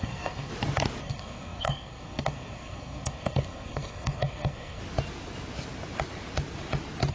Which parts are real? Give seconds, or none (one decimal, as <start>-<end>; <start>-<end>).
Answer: 0.5-1.0; 4.8-7.1

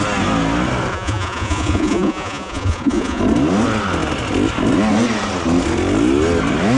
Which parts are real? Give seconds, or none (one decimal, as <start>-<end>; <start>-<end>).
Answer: 0.0-0.9; 3.2-6.8

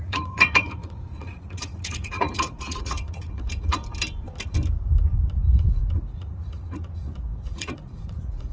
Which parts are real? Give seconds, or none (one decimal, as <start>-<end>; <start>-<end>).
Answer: 3.8-5.4

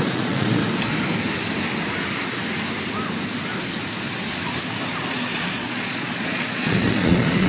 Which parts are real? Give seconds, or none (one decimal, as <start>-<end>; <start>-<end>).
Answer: 0.6-5.1

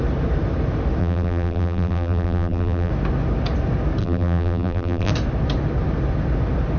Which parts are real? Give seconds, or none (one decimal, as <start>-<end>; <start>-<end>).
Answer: 0.0-1.0; 2.9-4.0; 5.1-6.8